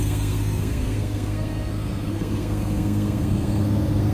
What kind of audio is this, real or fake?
fake